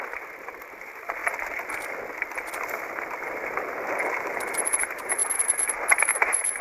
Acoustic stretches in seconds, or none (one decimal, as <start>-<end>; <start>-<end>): 1.2-4.1; 5.2-6.0